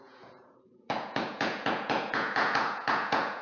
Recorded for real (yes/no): no